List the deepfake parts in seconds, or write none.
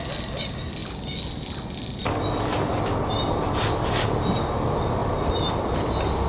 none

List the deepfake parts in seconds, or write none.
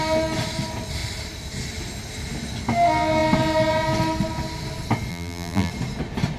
5.1-5.7 (vocoder, BigVGAN v2)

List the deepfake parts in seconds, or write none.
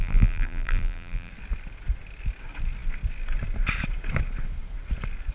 0.0-1.3 (vocoder, BigVGAN v2)